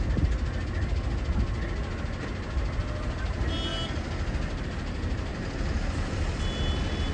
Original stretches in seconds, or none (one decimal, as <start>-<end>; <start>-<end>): 0.0-7.1